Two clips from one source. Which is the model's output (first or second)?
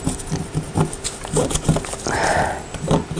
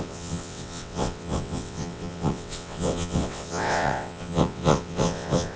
second